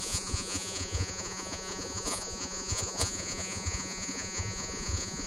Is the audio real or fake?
fake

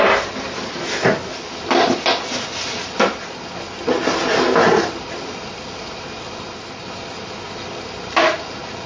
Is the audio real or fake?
real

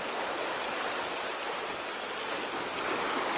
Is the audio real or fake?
real